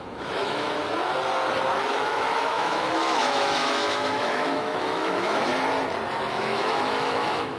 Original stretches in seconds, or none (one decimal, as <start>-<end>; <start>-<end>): 0.8-1.9; 5.5-6.3